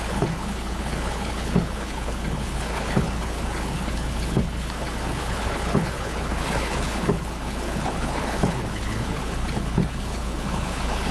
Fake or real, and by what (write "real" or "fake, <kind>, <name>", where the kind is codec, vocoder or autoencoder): fake, codec, HILCodec